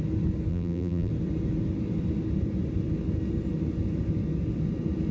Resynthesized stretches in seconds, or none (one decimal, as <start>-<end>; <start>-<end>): 0.5-1.1